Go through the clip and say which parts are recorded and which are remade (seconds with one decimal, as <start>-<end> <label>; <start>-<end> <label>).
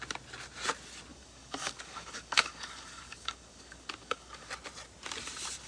0.0-1.1 recorded; 1.1-4.5 remade; 4.5-5.7 recorded